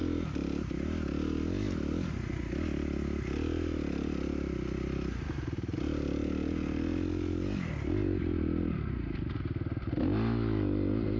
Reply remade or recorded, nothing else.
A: recorded